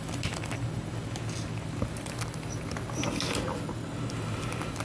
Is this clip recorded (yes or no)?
yes